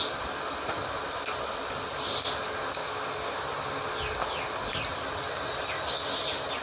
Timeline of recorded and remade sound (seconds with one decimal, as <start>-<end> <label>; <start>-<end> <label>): 0.0-2.8 recorded; 2.8-3.4 remade; 3.4-6.6 recorded